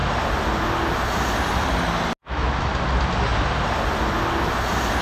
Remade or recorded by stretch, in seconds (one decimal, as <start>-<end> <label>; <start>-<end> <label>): 0.0-2.2 recorded; 2.2-2.7 remade; 2.7-5.0 recorded

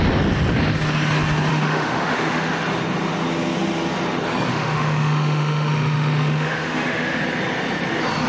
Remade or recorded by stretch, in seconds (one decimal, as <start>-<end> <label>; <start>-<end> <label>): 0.0-1.5 recorded; 1.5-2.5 remade; 2.5-4.5 recorded; 4.5-7.2 remade; 7.2-8.3 recorded

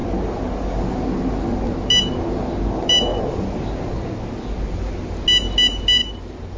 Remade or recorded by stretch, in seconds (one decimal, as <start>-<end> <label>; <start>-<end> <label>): 0.0-0.8 remade; 0.8-6.0 recorded; 6.0-6.6 remade

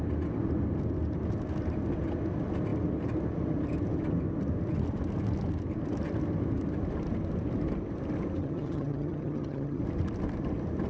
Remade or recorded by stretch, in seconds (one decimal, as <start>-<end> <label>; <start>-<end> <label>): 0.0-8.4 recorded; 8.4-9.8 remade; 9.8-10.9 recorded